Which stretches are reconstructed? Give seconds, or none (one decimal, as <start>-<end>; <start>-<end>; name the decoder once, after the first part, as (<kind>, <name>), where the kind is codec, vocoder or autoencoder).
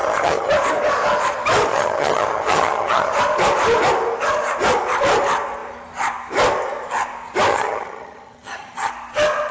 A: 0.0-0.5 (vocoder, HiFi-GAN); 1.7-3.1; 7.5-8.9